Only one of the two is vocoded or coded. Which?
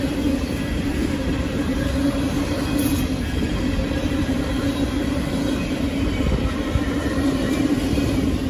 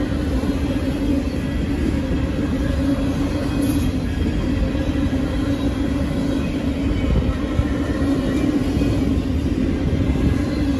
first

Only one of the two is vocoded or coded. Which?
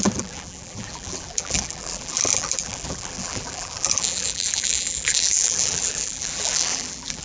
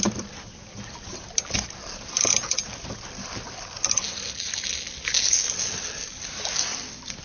first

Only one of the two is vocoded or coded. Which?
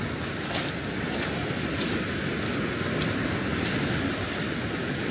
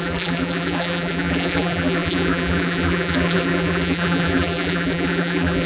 second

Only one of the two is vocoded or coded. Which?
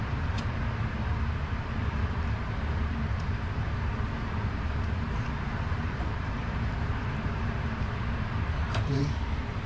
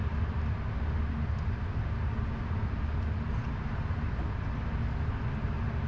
first